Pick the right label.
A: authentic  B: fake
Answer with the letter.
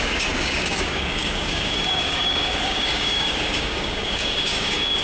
B